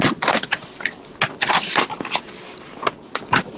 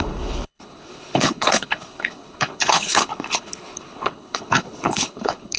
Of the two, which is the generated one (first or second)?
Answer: second